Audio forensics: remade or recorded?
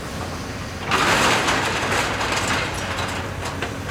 remade